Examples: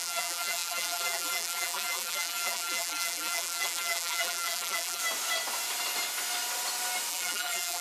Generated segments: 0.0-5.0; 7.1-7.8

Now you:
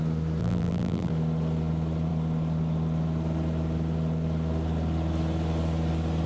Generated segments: 0.4-1.1

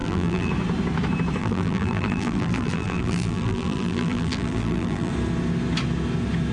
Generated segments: 0.0-0.5; 1.4-5.1

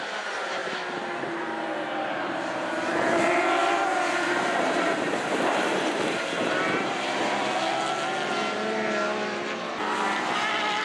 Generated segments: 0.0-0.6; 1.2-7.4

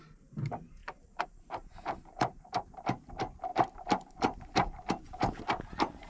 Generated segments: 0.8-3.1; 3.5-5.4

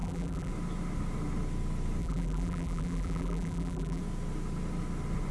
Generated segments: 0.0-0.5; 2.0-4.0

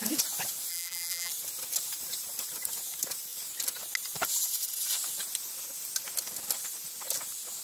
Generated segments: 0.7-1.3

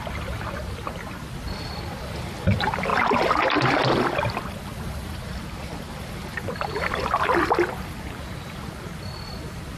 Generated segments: none